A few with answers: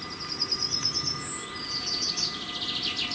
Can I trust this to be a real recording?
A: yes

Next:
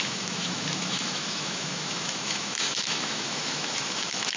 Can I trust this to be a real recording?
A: no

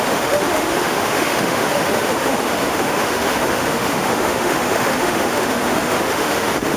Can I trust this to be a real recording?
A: no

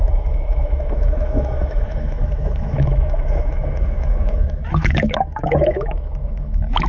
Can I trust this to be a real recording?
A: no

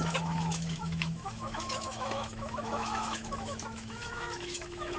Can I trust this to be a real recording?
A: no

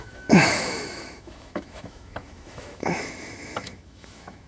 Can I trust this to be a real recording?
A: no